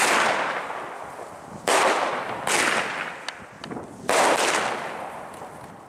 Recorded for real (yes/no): yes